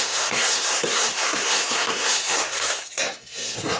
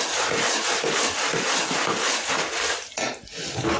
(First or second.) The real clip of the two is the second